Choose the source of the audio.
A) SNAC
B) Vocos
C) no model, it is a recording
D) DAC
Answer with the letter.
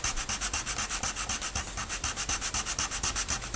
C